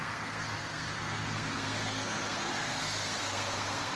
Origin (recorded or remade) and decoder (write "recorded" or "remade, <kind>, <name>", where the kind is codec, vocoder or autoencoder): remade, codec, SNAC